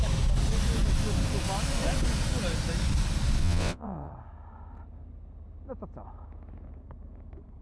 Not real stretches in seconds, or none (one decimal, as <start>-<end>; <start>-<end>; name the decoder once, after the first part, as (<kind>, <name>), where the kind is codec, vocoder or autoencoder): 3.4-4.1 (vocoder, WaveNeXt)